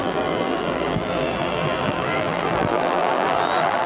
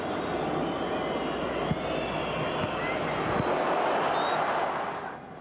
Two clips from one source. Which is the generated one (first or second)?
first